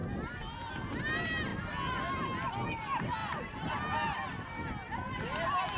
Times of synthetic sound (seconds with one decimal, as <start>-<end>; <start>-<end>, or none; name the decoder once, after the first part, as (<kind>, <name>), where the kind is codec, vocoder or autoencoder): 3.2-3.7 (vocoder, BigVGAN v2)